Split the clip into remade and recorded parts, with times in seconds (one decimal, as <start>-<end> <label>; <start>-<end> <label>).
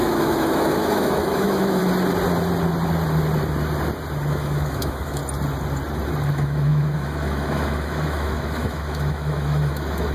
0.0-1.8 remade; 1.8-4.3 recorded; 4.3-5.2 remade; 5.2-6.3 recorded; 6.3-10.1 remade